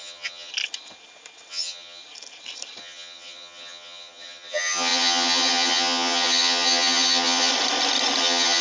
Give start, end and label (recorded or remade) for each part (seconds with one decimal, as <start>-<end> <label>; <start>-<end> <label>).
0.0-0.5 remade; 0.5-1.5 recorded; 1.5-2.0 remade; 2.0-2.8 recorded; 2.8-7.5 remade; 7.5-8.2 recorded; 8.2-8.6 remade